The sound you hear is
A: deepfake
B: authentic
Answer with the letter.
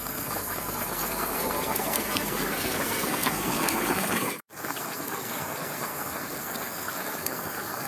A